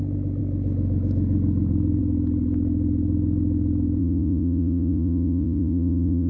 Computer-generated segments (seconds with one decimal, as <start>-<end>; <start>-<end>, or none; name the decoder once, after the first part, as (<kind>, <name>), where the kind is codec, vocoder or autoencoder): 4.0-6.3 (vocoder, Vocos)